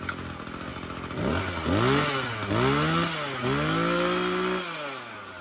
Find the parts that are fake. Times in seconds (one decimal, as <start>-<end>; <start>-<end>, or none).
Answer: none